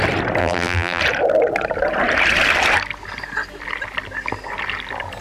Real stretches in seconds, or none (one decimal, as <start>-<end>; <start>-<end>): 0.0-0.4; 1.0-5.2